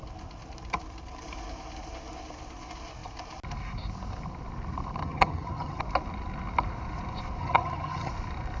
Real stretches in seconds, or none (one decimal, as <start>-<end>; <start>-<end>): 0.0-5.0; 5.8-7.4; 8.1-8.6